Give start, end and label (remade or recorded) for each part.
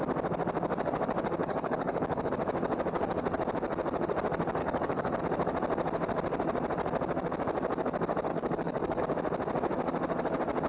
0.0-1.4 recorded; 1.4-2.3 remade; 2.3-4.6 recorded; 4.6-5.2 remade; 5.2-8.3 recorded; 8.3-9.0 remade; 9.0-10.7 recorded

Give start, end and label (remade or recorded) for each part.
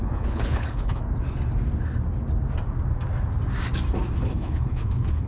0.0-1.0 remade; 1.0-4.2 recorded; 4.2-5.3 remade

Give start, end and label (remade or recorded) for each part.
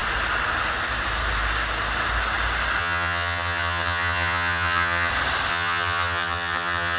0.0-2.8 recorded; 2.8-5.1 remade; 5.1-5.5 recorded; 5.5-7.0 remade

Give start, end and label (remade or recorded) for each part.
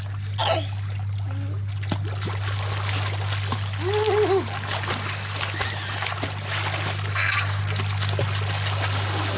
0.0-7.1 recorded; 7.1-7.6 remade; 7.6-9.4 recorded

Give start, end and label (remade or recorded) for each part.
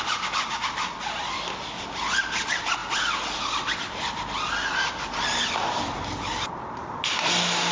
0.0-7.7 recorded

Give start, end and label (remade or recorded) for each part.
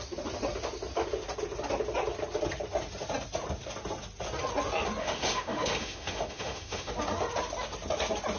0.0-5.0 recorded; 5.0-6.9 remade; 6.9-8.4 recorded